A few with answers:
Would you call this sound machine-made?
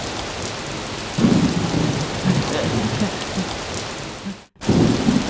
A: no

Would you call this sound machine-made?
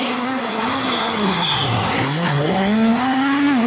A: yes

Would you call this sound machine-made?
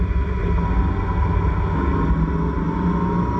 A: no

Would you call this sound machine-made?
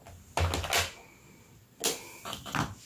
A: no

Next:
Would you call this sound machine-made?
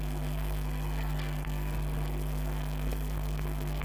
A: yes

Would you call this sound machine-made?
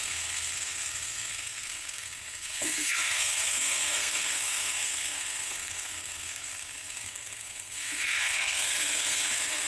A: yes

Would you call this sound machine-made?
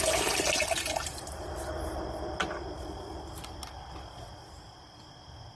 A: no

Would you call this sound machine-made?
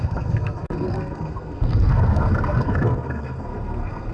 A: yes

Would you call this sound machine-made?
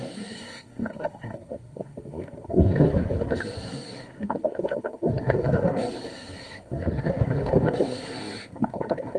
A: yes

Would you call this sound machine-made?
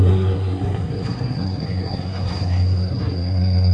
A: yes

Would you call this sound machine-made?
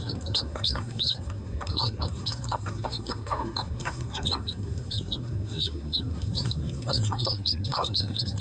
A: yes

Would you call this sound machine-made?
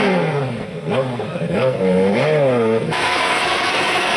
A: yes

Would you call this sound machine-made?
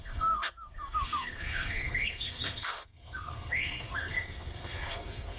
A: yes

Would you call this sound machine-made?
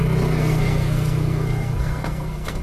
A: yes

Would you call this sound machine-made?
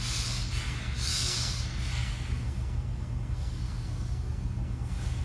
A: yes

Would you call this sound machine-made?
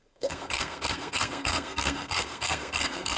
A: yes